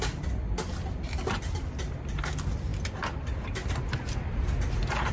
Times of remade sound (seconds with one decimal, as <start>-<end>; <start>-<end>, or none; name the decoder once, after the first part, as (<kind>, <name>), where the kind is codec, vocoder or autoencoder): none

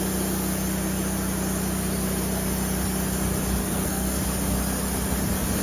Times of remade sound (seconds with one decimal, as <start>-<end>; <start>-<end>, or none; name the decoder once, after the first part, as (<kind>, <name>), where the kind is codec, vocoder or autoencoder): 3.6-4.2 (codec, SNAC)

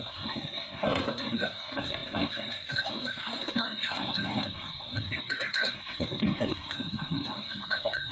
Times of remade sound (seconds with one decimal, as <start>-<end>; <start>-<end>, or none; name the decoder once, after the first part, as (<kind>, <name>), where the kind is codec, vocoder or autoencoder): 0.0-8.1 (codec, SNAC)

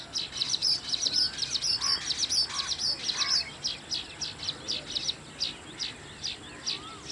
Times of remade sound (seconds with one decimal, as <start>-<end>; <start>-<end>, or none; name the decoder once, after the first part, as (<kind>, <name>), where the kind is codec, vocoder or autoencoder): none

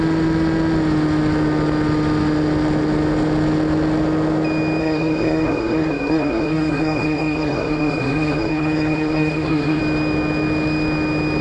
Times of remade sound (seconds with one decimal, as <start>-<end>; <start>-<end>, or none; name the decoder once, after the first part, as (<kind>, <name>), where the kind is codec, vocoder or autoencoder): 4.8-9.8 (codec, SNAC)

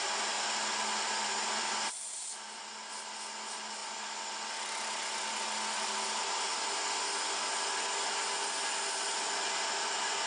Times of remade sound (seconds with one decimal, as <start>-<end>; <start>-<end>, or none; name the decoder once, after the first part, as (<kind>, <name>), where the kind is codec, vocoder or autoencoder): none